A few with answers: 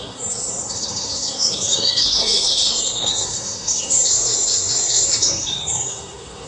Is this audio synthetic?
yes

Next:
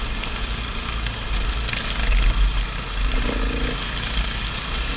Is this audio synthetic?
no